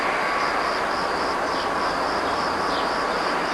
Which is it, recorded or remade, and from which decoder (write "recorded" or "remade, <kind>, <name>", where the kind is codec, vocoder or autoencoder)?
recorded